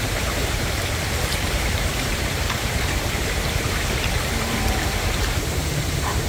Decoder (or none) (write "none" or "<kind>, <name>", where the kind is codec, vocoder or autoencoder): vocoder, BigVGAN v2